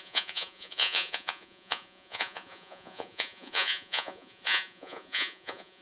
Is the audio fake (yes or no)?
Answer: yes